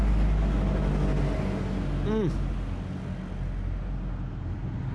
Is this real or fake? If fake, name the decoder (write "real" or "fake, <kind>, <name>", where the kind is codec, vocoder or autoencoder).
real